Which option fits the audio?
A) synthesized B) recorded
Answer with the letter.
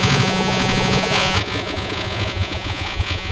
A